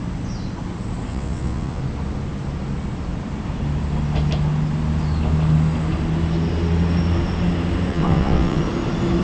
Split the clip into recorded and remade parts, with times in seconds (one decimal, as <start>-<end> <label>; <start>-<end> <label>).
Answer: 0.0-1.1 recorded; 1.1-1.8 remade; 1.8-7.9 recorded; 7.9-8.6 remade; 8.6-9.2 recorded